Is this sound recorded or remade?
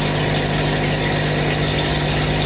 recorded